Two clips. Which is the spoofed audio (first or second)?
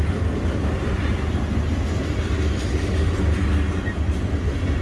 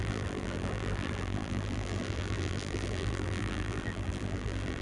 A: second